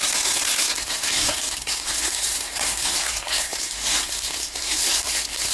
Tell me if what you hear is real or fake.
fake